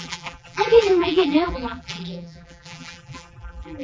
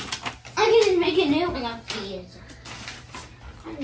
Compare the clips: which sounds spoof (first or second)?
first